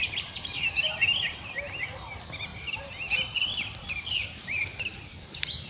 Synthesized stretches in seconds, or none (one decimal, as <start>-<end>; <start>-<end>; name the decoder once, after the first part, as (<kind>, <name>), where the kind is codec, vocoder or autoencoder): 0.0-2.5 (vocoder, BigVGAN v2); 4.1-5.7